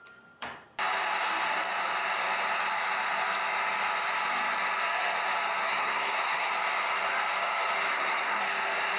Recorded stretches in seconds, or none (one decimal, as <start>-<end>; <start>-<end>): 0.0-5.6; 6.5-7.9; 8.4-9.0